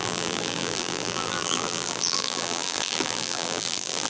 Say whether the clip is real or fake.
fake